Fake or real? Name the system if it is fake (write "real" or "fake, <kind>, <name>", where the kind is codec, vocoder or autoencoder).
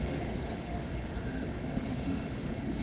fake, autoencoder, DAC-VAE